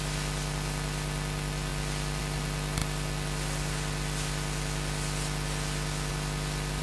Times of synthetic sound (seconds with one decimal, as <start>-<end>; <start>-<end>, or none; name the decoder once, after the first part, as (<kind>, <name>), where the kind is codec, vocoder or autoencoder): none